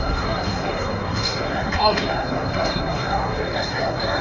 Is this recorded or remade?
remade